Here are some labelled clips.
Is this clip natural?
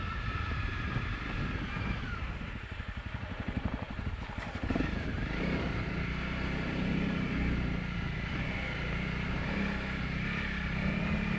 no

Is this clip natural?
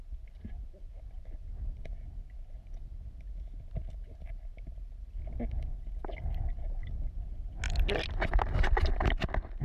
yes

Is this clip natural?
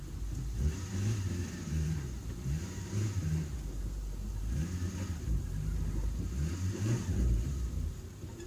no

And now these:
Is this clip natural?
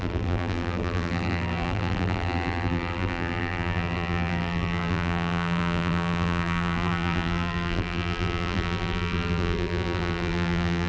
no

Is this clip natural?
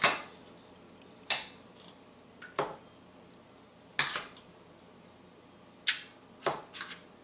yes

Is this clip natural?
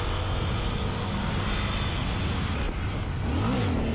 yes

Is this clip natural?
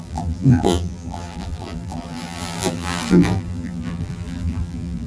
no